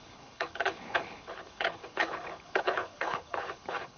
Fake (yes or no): yes